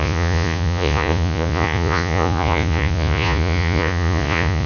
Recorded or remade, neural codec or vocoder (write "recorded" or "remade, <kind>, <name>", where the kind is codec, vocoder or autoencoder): remade, vocoder, Vocos